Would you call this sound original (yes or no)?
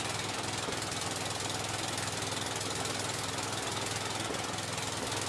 yes